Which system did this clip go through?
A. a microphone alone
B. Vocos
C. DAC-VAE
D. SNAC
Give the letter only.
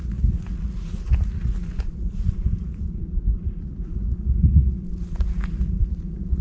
B